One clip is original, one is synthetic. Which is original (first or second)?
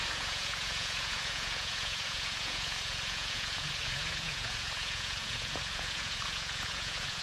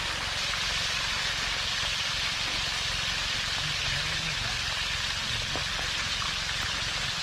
second